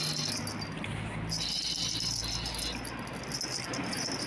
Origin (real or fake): real